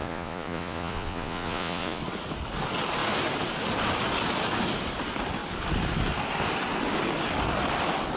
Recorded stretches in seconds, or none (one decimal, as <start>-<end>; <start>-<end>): 2.0-8.2